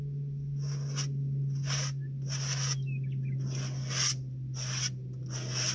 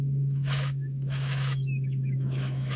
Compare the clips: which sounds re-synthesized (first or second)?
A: second